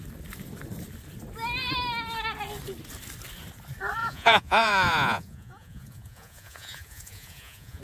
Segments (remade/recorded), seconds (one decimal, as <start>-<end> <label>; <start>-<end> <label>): 0.0-4.0 recorded; 4.0-7.8 remade